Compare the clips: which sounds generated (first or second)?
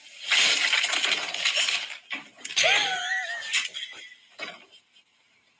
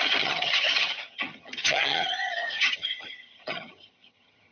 second